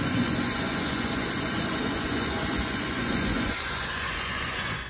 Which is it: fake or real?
fake